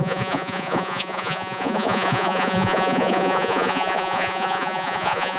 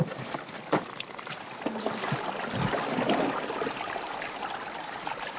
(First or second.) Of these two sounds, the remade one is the first